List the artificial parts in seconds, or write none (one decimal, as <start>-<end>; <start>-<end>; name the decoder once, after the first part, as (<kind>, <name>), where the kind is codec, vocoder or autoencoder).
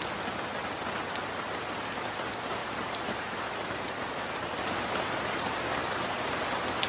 2.6-6.3 (vocoder, BigVGAN v2)